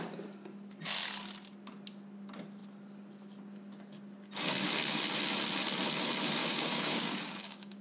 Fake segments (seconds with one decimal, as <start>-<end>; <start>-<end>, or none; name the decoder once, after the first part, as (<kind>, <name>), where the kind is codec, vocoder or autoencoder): 6.4-7.8 (codec, DAC)